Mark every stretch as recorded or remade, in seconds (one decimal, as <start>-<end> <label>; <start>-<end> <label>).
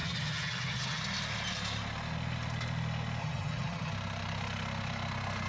0.0-1.0 remade; 1.0-3.2 recorded; 3.2-3.9 remade; 3.9-5.5 recorded